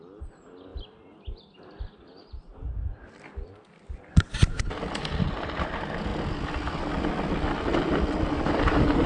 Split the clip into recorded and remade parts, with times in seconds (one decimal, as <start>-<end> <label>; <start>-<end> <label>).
0.0-9.1 recorded

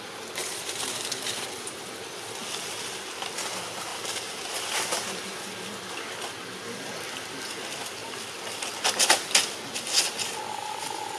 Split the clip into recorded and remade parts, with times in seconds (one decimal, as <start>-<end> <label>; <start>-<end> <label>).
0.0-0.4 recorded; 0.4-1.8 remade; 1.8-11.2 recorded